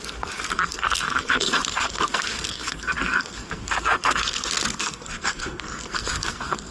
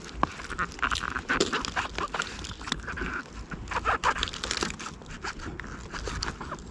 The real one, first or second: second